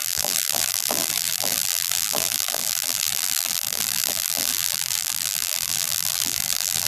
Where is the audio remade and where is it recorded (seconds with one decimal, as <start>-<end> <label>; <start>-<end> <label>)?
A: 0.0-6.9 remade